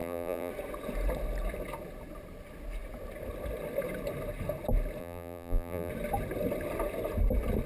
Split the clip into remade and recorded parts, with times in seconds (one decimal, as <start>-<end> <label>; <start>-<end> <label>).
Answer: 0.0-0.5 remade; 0.5-5.0 recorded; 5.0-5.9 remade; 5.9-7.7 recorded